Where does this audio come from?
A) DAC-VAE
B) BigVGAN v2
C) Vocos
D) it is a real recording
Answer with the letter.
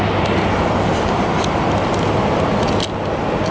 D